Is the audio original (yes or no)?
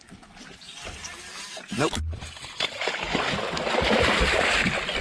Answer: yes